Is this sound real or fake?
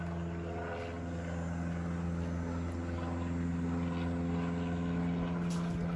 real